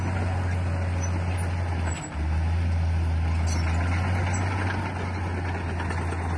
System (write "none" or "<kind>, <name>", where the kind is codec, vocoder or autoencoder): none